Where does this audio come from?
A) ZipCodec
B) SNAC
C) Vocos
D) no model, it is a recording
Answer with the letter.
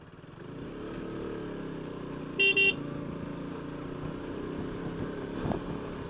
D